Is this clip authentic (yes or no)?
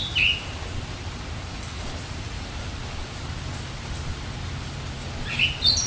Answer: yes